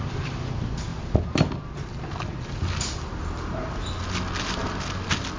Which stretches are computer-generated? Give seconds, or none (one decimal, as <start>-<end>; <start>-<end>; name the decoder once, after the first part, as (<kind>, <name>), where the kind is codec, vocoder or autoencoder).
none